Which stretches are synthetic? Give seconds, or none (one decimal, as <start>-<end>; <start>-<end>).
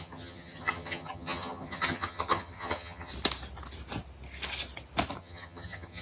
0.0-3.1; 5.2-6.0